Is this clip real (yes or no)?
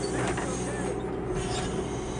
yes